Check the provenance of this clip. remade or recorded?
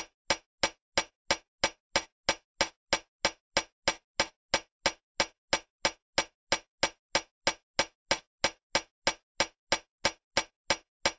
recorded